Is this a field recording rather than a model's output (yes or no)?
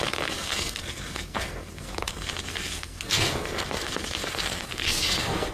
no